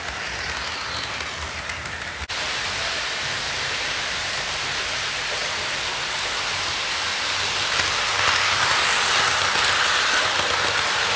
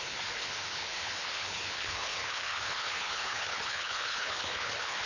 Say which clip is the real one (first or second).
first